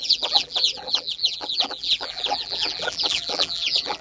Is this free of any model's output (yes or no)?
no